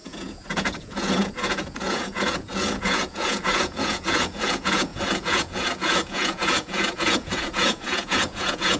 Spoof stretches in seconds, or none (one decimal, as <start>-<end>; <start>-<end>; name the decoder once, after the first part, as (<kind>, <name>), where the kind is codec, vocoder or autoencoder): 0.0-8.8 (vocoder, Vocos)